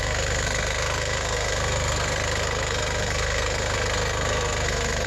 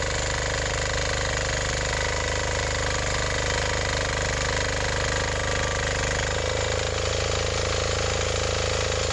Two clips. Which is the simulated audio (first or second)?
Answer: first